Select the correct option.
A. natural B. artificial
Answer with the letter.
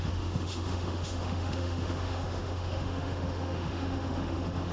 B